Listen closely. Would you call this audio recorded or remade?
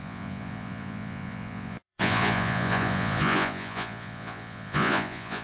remade